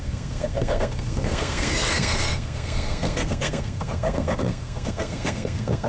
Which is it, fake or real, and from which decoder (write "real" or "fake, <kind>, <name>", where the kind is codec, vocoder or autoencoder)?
fake, codec, SNAC